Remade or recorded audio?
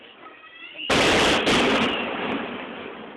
recorded